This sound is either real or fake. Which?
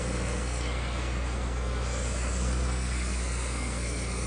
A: fake